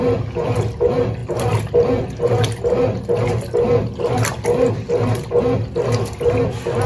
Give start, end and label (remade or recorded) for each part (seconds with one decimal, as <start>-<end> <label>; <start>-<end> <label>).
0.0-6.9 recorded